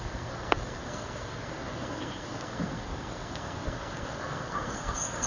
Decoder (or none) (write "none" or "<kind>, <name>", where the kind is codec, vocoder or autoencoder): codec, SNAC